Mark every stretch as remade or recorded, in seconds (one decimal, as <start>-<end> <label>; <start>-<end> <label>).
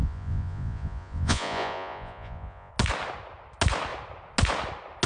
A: 0.0-2.7 remade; 2.7-5.1 recorded